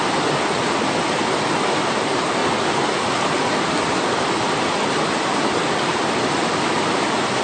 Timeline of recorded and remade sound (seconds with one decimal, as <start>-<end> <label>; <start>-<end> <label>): 0.0-7.4 recorded